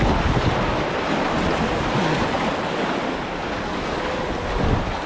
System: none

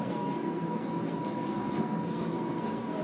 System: codec, SNAC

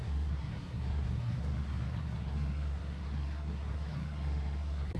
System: codec, SNAC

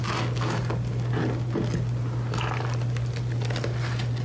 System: none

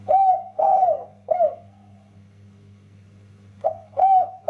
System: codec, SNAC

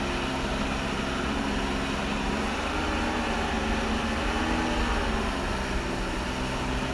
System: none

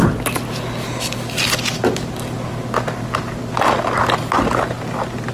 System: none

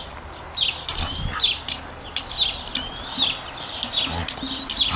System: none